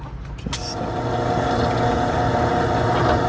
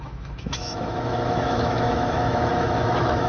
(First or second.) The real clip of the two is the first